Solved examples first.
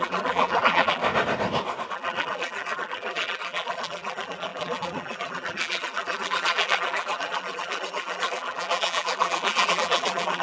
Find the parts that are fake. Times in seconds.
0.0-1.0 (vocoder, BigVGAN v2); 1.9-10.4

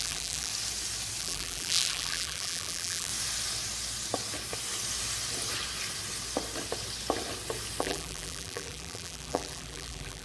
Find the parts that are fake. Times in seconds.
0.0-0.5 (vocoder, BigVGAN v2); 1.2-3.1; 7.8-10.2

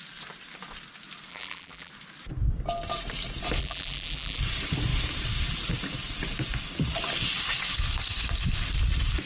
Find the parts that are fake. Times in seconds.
1.3-1.9 (vocoder, BigVGAN v2); 3.6-4.4

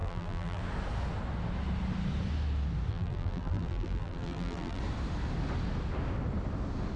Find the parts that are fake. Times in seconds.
0.0-0.6 (vocoder, BigVGAN v2); 2.9-4.8